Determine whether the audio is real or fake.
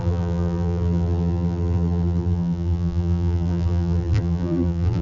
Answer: fake